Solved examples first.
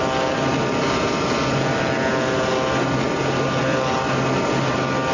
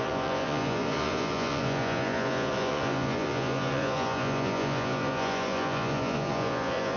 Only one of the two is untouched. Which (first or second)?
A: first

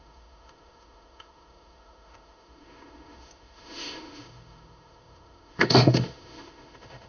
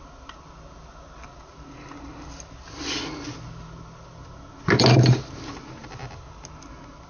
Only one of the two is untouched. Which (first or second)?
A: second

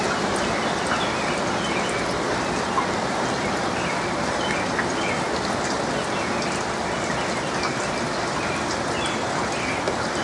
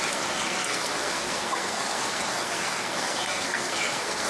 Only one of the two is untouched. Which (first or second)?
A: first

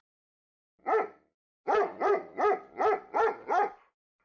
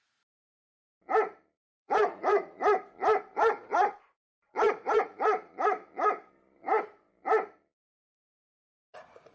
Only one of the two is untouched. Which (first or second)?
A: first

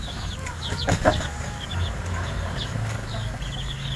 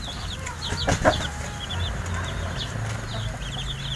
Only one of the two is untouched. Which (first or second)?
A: second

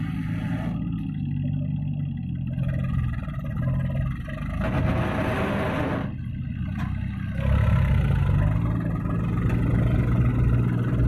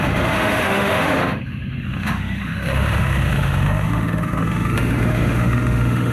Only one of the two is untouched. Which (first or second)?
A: first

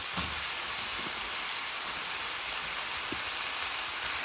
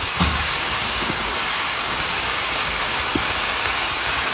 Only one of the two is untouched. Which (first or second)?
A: first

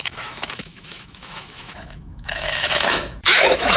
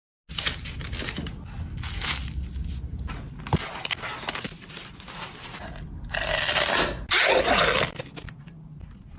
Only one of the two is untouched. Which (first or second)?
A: second